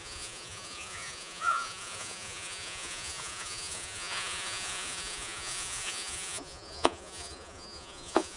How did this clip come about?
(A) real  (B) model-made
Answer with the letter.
B